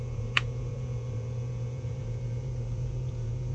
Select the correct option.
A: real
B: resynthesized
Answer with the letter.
B